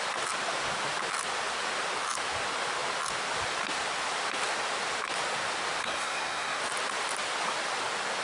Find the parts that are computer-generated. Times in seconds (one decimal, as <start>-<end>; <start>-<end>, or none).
5.8-6.6